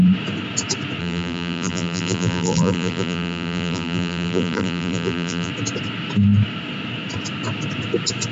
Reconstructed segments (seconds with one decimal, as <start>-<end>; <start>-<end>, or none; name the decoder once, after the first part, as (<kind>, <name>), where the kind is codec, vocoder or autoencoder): 1.0-5.5 (vocoder, BigVGAN v2)

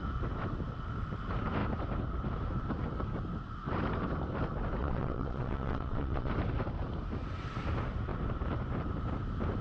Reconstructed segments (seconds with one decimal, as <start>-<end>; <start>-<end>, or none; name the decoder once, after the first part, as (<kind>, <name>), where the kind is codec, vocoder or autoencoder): 4.8-6.3 (vocoder, WaveNeXt)

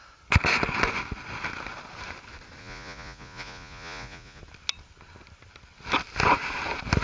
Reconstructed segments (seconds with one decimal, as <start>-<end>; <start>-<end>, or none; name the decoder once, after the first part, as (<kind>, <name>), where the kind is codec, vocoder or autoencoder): 2.6-4.4 (vocoder, Vocos)

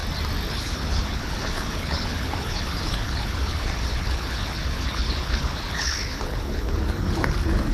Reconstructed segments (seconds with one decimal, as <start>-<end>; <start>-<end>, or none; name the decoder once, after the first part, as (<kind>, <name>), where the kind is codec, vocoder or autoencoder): 0.5-7.7 (codec, HILCodec)

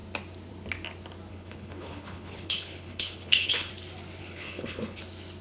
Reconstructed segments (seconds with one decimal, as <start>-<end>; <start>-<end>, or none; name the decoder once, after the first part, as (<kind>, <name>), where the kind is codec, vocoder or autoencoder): 1.3-3.7 (codec, HILCodec); 4.2-5.0

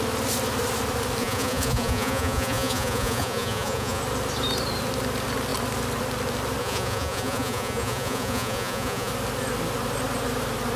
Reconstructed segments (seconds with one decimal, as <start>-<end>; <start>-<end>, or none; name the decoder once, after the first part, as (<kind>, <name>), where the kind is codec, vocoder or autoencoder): 1.2-4.0 (vocoder, Vocos); 6.6-9.1

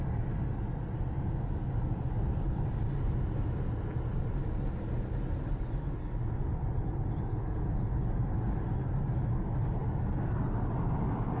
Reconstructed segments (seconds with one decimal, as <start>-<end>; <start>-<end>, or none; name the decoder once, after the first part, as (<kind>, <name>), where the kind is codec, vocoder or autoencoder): none

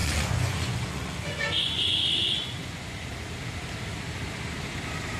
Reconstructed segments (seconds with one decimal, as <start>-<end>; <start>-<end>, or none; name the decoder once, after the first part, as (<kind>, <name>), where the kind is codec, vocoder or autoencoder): 0.0-3.1 (vocoder, Vocos)